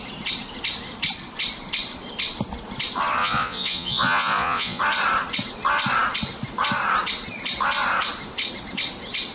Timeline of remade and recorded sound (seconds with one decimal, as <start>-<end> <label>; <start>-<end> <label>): 0.0-3.2 recorded; 3.2-4.8 remade; 4.8-9.3 recorded